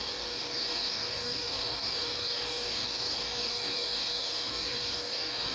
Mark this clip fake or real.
fake